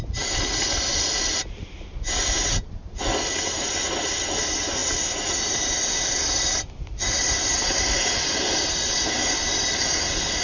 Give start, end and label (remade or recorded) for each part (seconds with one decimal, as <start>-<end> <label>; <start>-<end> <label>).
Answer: 0.0-10.4 recorded